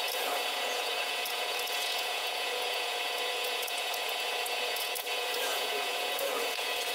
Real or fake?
fake